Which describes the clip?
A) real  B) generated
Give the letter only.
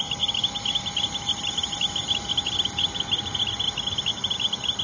A